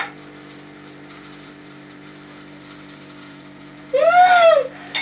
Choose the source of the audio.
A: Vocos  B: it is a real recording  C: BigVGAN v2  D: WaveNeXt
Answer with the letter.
C